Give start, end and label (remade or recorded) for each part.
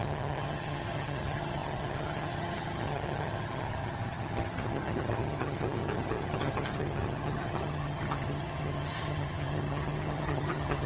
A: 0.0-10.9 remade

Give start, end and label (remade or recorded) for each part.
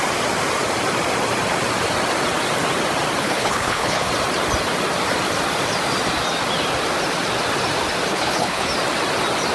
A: 0.0-3.2 recorded; 3.2-4.1 remade; 4.1-8.1 recorded; 8.1-8.7 remade; 8.7-9.5 recorded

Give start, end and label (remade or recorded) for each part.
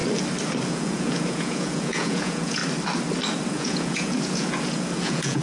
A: 0.0-0.7 recorded; 0.7-2.6 remade; 2.6-3.5 recorded; 3.5-5.4 remade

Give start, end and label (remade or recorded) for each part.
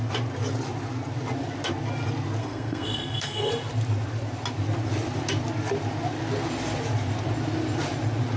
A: 0.0-2.4 recorded; 2.4-3.5 remade; 3.5-8.4 recorded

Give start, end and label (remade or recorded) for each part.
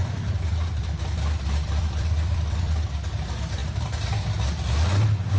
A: 0.0-3.6 remade; 3.6-5.4 recorded